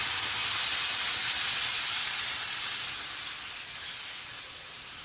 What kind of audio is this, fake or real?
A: real